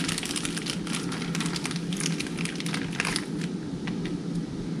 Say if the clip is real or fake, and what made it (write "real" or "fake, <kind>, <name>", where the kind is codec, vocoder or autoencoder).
real